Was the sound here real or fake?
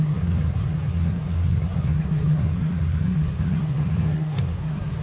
fake